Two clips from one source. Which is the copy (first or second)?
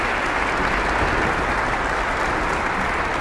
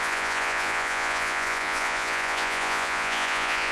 second